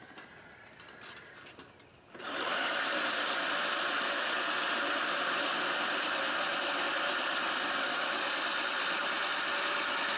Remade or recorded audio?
recorded